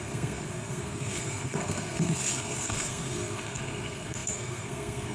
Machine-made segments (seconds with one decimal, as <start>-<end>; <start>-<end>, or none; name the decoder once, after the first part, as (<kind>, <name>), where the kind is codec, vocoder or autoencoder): 0.0-5.1 (codec, SNAC)

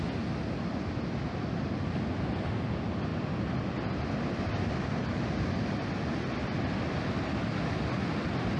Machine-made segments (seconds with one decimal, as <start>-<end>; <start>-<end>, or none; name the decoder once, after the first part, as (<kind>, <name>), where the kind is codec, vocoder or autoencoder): none

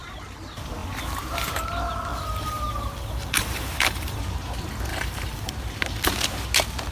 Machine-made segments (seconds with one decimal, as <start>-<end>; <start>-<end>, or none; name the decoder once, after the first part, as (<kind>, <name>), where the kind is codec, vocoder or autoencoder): 2.1-4.2 (vocoder, BigVGAN v2); 4.9-5.5

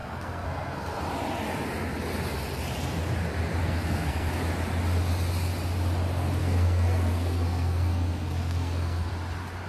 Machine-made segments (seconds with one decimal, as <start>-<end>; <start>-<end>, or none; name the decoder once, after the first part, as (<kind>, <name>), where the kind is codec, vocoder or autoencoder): 0.0-1.0 (codec, SNAC); 3.6-4.3; 6.4-9.1